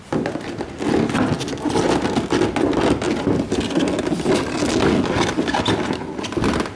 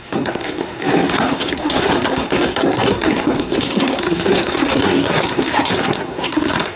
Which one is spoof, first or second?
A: second